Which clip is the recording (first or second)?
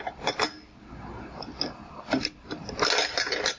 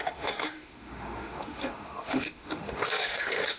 first